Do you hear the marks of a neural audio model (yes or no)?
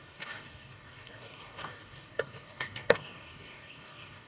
yes